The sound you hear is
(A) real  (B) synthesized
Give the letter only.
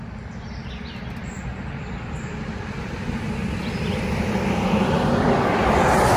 B